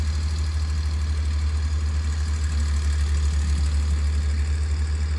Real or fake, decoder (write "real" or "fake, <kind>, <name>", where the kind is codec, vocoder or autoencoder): real